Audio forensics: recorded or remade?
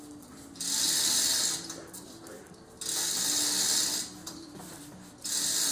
recorded